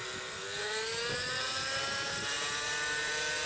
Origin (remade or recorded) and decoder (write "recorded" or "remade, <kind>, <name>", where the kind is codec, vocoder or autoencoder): recorded